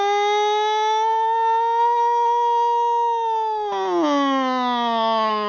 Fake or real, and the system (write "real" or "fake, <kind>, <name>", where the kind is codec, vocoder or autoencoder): real